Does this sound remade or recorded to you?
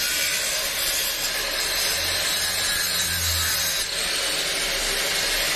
recorded